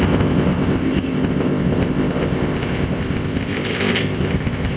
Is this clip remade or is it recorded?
remade